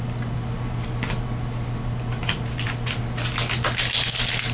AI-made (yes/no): no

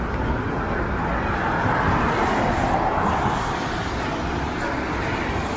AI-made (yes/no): no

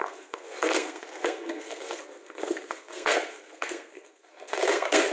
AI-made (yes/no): yes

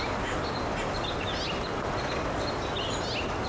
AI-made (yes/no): no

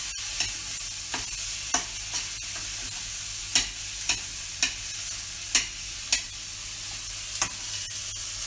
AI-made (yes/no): no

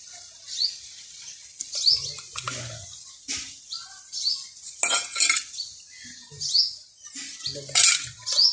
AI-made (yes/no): no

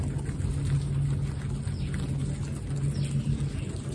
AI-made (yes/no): no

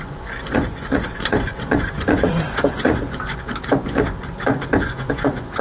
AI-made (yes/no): yes